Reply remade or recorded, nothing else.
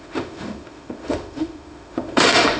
remade